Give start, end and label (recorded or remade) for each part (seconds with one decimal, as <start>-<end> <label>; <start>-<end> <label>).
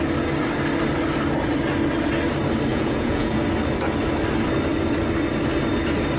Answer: 0.0-2.7 recorded; 2.7-3.4 remade; 3.4-6.2 recorded